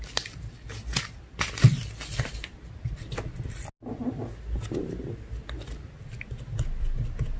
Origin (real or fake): real